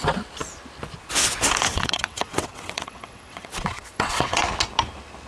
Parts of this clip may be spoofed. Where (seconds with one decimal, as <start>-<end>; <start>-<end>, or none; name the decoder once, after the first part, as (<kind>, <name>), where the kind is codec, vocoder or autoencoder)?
1.7-4.4 (vocoder, WaveNeXt)

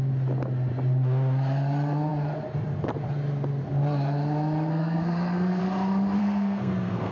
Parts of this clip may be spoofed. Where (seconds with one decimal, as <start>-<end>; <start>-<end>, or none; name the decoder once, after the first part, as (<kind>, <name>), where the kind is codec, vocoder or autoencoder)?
4.7-5.6 (codec, SNAC); 6.2-7.1

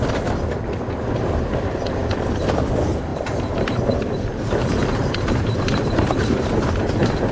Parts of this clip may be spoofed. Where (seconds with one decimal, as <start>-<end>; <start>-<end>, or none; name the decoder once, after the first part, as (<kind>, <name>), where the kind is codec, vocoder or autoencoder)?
3.1-4.0 (vocoder, BigVGAN v2); 4.8-6.5

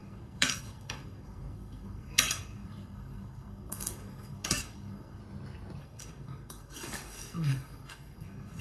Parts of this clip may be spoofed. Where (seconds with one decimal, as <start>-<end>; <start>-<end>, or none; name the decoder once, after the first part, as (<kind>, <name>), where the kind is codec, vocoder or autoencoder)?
0.0-5.2 (codec, SNAC); 5.8-8.6

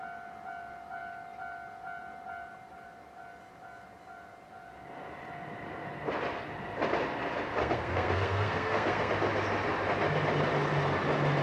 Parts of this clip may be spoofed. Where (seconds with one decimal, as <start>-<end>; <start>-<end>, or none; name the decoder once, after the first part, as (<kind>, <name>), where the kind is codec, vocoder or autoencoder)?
7.6-9.1 (codec, SNAC)

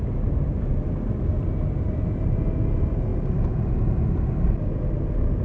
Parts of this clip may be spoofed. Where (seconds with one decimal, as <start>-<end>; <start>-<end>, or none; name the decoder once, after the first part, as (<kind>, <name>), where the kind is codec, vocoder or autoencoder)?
none

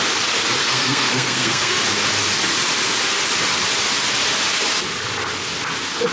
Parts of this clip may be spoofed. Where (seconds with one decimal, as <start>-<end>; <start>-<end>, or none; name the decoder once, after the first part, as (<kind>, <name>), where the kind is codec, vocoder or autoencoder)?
0.6-1.8 (codec, SNAC)

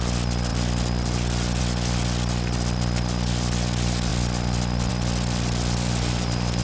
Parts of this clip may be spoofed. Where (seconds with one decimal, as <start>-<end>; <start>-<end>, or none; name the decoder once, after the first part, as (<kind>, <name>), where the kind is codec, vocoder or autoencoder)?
none